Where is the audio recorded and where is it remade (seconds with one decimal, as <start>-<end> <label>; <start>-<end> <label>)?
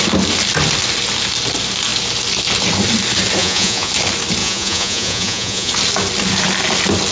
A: 0.0-3.4 recorded; 3.4-3.9 remade; 3.9-4.4 recorded; 4.4-5.7 remade; 5.7-7.1 recorded